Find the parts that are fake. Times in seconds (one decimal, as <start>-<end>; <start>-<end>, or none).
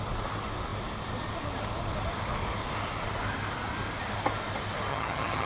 4.9-5.5